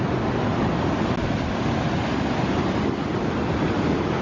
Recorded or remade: recorded